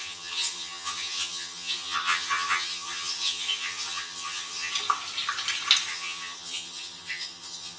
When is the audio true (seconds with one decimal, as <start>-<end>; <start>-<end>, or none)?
4.7-5.9